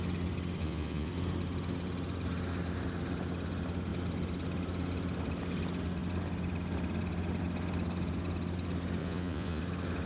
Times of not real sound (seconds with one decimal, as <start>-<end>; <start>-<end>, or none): 0.6-1.1; 9.0-9.6

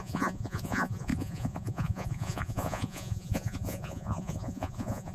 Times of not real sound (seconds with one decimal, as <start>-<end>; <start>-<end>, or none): 0.0-5.1

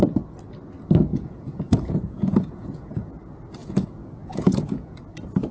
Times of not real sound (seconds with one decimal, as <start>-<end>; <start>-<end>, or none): 1.1-3.1; 3.6-5.0

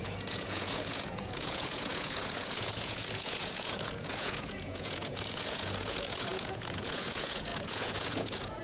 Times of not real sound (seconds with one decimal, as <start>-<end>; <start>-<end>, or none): 0.0-8.6